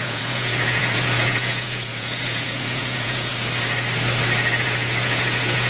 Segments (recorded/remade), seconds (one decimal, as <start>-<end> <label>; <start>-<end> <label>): 0.0-3.3 remade; 3.3-4.6 recorded; 4.6-5.7 remade